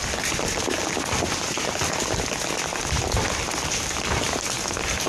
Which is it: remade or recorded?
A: recorded